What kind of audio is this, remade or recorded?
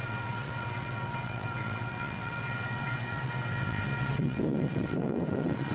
remade